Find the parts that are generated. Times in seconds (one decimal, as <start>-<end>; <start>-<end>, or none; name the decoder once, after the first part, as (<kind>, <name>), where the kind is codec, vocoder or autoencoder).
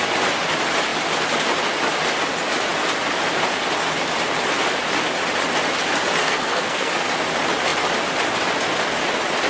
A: 6.2-6.9 (codec, SNAC)